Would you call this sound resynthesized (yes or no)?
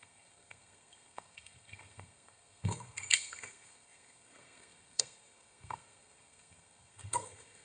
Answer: yes